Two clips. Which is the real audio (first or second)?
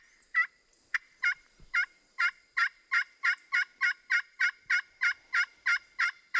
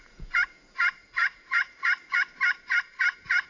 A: first